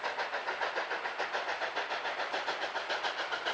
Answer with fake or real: real